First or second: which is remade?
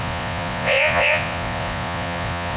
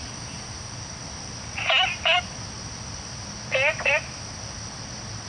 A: first